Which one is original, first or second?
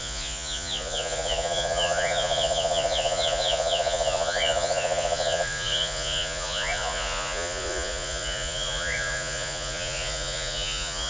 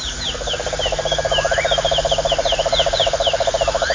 second